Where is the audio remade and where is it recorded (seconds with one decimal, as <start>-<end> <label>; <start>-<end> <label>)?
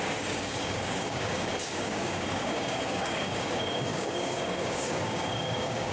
0.0-5.9 remade